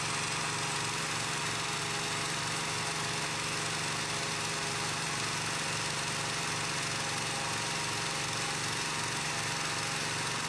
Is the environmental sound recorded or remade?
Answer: recorded